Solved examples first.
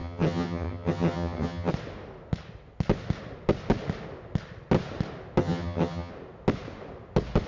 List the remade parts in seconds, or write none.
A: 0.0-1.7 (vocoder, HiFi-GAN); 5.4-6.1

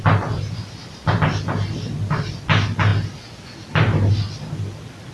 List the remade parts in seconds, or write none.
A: none

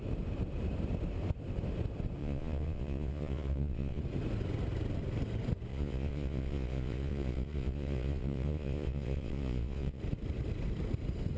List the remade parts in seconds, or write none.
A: 2.2-4.0 (vocoder, Vocos); 5.7-10.0

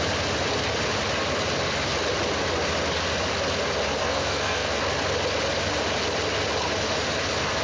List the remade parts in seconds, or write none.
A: 4.0-4.8 (codec, SNAC)

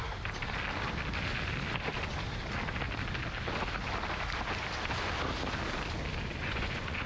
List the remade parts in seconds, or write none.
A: 6.4-7.1 (vocoder, Vocos)

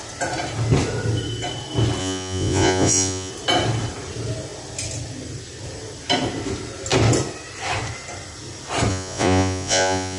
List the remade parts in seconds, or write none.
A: 2.0-3.3 (vocoder, Vocos); 8.9-10.2

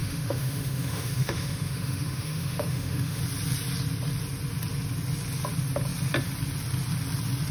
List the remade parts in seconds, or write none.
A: 0.0-3.2 (autoencoder, DAC-VAE)